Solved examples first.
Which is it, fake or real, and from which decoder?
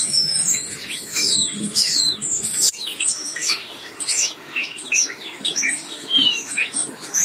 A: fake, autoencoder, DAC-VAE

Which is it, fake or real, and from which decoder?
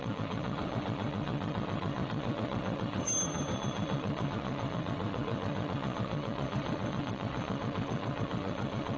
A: fake, vocoder, WaveNeXt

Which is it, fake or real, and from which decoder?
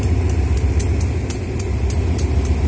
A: real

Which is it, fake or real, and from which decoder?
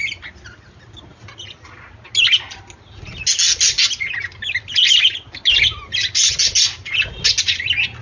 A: real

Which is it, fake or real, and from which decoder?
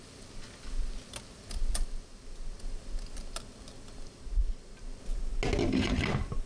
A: real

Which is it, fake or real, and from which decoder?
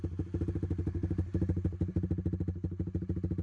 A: real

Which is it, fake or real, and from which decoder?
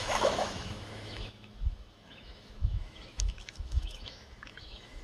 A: fake, autoencoder, DAC-VAE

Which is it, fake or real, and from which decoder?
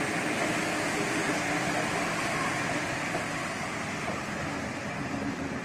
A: real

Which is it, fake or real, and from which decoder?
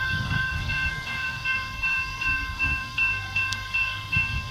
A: fake, codec, SNAC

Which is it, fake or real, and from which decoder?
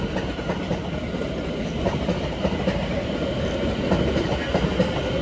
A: real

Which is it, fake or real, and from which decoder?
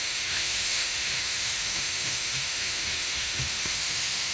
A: fake, autoencoder, DAC-VAE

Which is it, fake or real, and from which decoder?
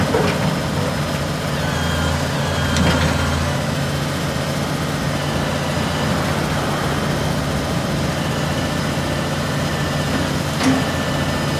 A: real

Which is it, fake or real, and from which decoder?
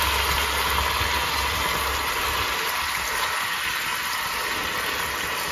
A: real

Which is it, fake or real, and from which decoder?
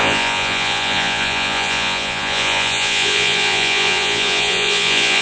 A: fake, vocoder, Vocos